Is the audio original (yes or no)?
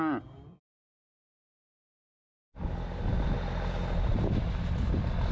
yes